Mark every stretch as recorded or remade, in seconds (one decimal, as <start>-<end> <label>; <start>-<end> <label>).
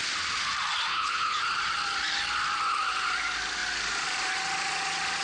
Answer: 0.0-0.9 recorded; 0.9-1.4 remade; 1.4-5.2 recorded